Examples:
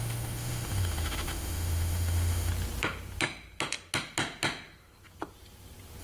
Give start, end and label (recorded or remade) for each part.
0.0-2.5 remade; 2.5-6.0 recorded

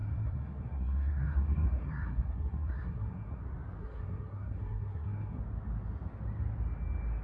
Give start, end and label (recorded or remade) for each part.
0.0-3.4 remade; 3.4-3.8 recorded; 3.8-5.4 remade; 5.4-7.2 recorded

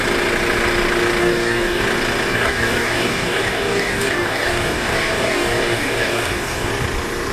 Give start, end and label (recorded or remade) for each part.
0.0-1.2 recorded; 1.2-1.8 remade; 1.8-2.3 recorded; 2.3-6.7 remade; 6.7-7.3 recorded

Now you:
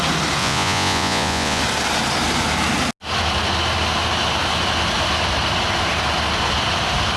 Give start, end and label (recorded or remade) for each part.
0.0-0.4 recorded; 0.4-1.6 remade; 1.6-7.2 recorded